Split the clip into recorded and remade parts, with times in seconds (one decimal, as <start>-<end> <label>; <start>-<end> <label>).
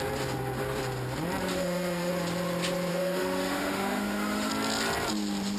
0.0-1.5 recorded; 1.5-2.1 remade; 2.1-2.9 recorded; 2.9-4.5 remade; 4.5-5.6 recorded